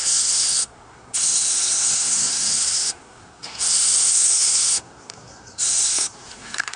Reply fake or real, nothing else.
fake